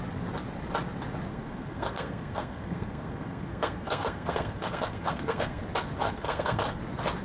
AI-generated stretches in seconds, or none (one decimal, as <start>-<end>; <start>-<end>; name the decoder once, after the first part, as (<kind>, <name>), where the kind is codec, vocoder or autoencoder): 1.3-5.6 (codec, SNAC); 6.0-6.8

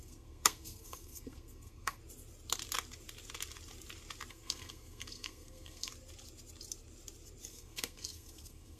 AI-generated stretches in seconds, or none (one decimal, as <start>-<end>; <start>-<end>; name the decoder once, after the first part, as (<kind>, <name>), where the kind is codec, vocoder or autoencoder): 0.0-2.0 (codec, SNAC); 4.3-5.9; 7.5-8.8

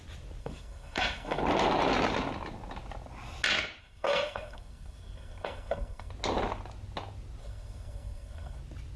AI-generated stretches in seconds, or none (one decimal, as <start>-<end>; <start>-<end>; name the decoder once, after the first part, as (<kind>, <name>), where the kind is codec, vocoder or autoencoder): 0.4-1.4 (codec, SNAC); 3.8-6.1; 7.4-8.6

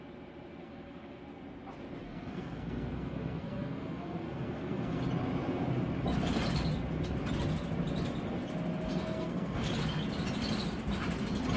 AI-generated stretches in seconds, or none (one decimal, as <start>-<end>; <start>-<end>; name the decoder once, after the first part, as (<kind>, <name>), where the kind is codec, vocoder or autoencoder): 0.6-1.2 (codec, SNAC); 2.0-5.0; 8.9-9.7

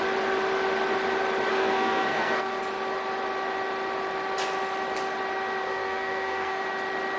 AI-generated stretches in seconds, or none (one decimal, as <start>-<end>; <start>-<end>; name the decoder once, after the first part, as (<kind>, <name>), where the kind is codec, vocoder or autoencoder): 1.5-2.6 (codec, SNAC); 5.6-6.6

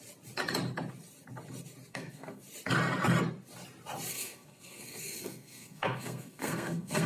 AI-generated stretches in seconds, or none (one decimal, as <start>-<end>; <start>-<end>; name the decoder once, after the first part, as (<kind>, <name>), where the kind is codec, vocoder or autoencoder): 1.9-2.4 (codec, SNAC); 4.1-7.1